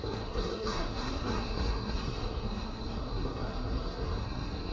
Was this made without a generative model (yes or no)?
no